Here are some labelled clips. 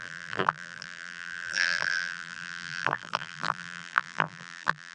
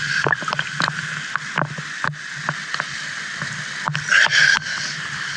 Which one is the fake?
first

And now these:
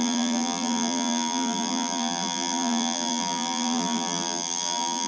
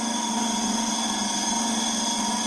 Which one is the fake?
first